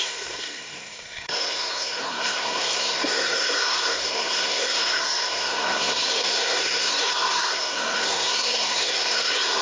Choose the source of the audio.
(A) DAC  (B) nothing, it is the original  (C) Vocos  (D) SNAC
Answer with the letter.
D